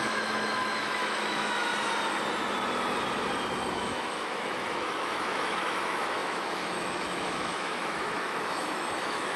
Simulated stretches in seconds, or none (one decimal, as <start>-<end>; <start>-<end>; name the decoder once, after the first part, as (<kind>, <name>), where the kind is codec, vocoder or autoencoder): 0.0-1.7 (autoencoder, DAC-VAE); 3.7-9.4